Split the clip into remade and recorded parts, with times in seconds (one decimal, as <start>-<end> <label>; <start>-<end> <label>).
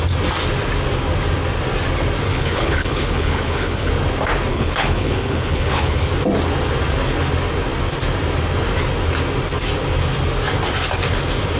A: 0.0-2.3 recorded; 2.3-3.9 remade; 3.9-4.5 recorded; 4.5-6.1 remade; 6.1-11.6 recorded